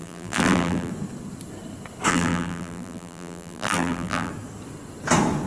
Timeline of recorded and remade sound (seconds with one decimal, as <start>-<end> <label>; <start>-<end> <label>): 0.0-0.9 remade; 0.9-2.1 recorded; 2.1-4.3 remade; 4.3-5.5 recorded